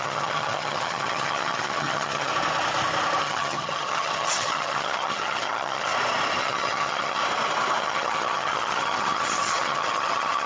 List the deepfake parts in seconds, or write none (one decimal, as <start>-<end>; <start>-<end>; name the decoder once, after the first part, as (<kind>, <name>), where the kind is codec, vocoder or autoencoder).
0.0-2.3 (vocoder, HiFi-GAN); 3.2-5.9; 6.4-7.2; 7.8-10.5